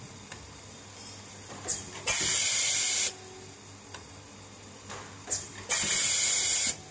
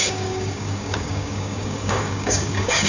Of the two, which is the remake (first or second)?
second